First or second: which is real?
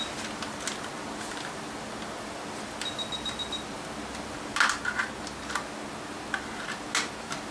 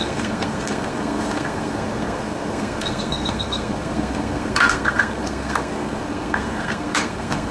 first